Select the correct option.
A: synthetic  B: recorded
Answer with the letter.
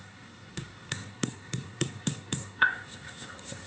A